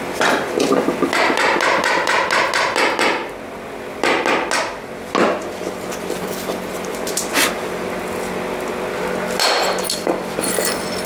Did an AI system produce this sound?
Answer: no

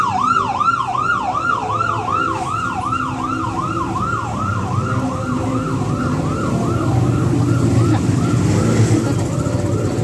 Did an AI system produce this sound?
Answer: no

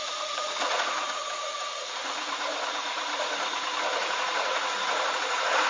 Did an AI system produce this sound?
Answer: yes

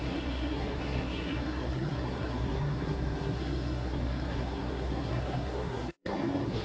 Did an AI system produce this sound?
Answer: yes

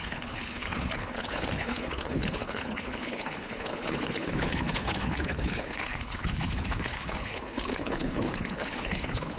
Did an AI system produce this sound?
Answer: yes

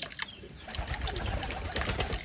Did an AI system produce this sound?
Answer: no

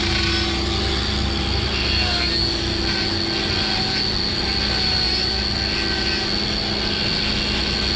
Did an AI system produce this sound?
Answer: no